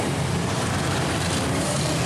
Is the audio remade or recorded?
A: remade